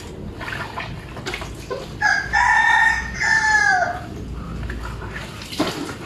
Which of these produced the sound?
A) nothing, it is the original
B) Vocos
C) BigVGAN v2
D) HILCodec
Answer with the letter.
A